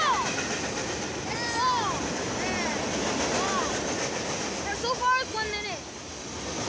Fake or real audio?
real